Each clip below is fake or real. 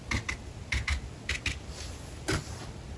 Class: real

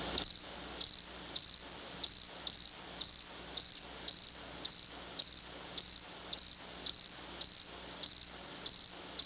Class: real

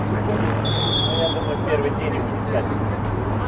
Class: real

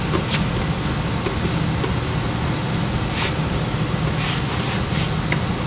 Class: real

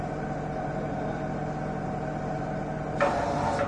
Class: real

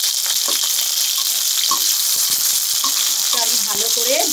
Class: real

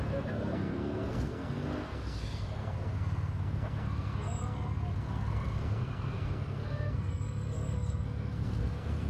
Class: fake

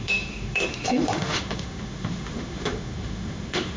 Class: fake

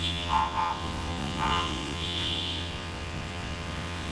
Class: fake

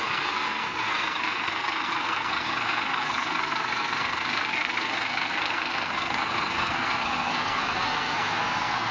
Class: fake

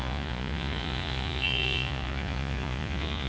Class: fake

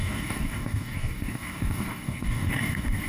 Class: fake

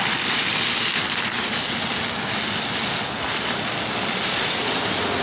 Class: real